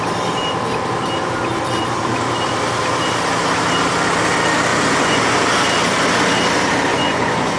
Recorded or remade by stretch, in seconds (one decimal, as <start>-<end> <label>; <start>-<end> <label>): 0.0-4.7 recorded; 4.7-5.4 remade; 5.4-6.9 recorded; 6.9-7.6 remade